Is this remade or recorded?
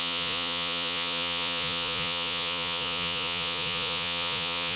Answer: remade